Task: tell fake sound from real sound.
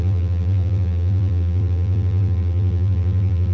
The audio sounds fake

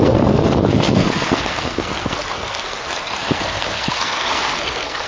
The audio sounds fake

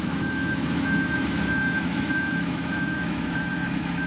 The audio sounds fake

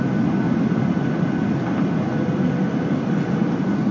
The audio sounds fake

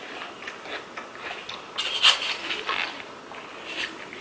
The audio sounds real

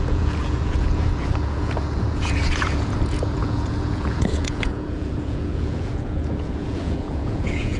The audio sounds fake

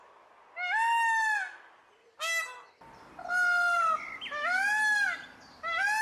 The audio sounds real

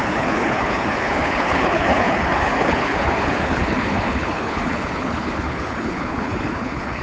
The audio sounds fake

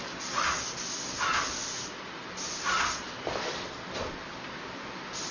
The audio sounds real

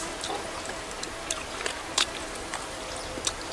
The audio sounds real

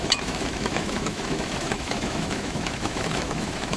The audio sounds fake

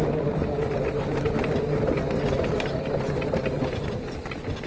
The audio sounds real